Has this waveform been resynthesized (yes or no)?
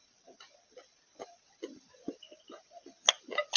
no